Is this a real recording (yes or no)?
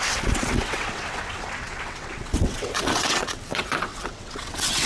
no